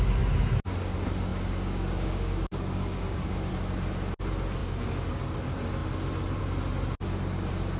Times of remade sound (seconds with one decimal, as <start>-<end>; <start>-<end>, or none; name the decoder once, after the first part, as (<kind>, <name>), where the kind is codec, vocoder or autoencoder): 1.3-3.5 (codec, DAC); 4.6-5.2